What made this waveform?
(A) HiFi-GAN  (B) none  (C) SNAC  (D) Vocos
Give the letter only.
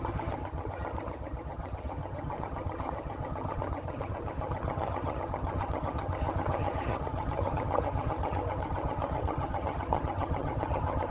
A